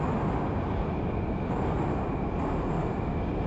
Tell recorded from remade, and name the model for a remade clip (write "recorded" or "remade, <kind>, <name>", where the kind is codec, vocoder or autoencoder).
recorded